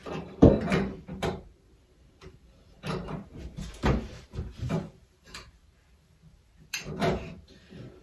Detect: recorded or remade remade